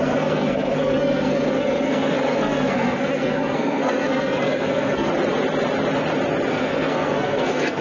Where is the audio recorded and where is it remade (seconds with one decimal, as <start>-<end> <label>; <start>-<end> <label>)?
0.0-5.1 remade; 5.1-6.5 recorded; 6.5-7.8 remade